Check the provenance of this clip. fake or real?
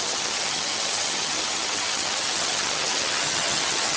fake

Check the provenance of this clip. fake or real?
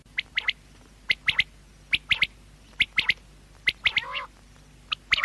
real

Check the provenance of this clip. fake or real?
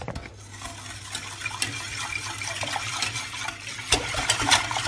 real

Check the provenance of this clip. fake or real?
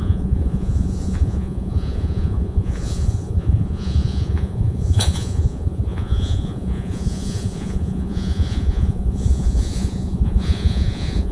fake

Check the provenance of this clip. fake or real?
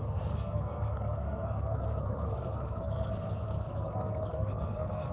fake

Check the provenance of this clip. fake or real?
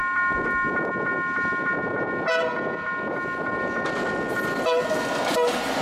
real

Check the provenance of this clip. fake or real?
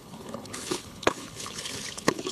fake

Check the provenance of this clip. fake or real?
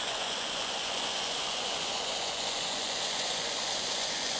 fake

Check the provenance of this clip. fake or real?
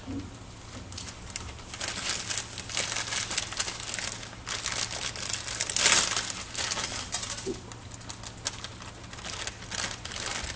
real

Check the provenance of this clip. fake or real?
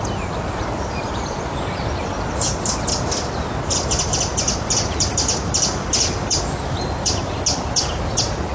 real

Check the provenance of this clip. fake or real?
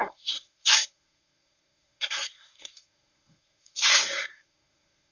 fake